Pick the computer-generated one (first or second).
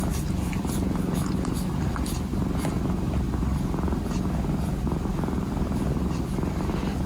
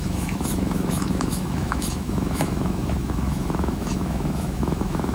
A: second